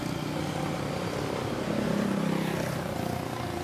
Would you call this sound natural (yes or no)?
yes